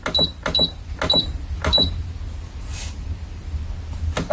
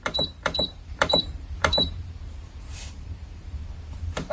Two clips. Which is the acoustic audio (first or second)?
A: first